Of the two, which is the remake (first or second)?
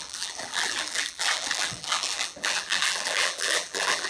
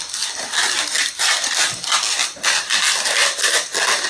first